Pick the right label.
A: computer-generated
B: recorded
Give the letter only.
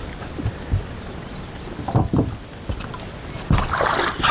B